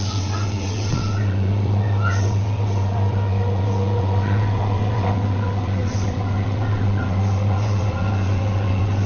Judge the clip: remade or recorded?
remade